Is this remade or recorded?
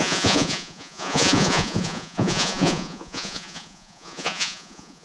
remade